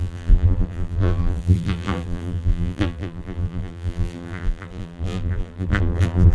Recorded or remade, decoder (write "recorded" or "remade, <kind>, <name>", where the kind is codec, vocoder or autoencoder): remade, vocoder, BigVGAN v2